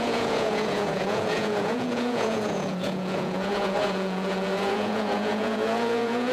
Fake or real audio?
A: fake